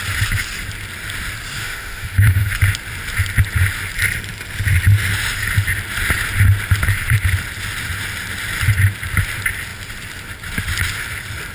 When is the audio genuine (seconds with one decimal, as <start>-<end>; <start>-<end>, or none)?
0.0-1.6; 2.5-11.5